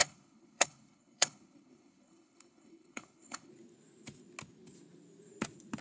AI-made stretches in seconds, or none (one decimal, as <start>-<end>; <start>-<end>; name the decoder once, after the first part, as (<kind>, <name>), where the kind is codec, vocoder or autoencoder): 0.0-3.5 (codec, HILCodec)

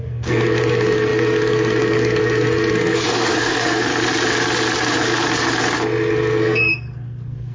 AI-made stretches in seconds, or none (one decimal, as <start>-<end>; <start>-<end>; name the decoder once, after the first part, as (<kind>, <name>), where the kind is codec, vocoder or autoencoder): 0.0-3.9 (codec, SNAC); 6.1-7.5

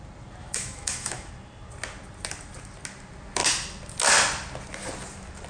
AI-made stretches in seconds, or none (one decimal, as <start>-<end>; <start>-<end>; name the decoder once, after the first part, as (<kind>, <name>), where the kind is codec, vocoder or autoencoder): 0.4-1.3 (autoencoder, DAC-VAE)